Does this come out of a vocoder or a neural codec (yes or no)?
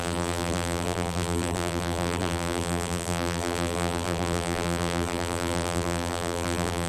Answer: yes